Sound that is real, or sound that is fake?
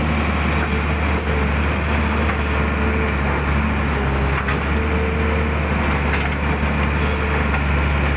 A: real